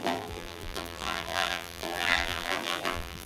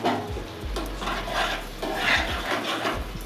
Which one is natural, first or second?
second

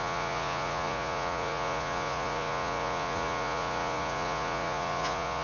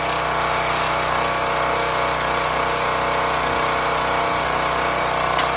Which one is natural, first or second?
second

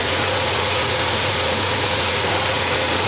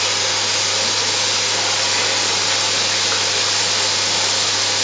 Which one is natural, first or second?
second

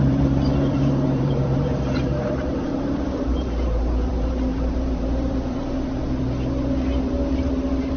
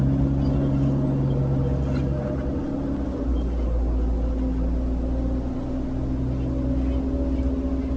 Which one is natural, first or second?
second